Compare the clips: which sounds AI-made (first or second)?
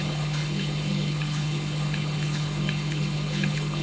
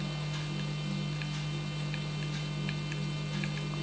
first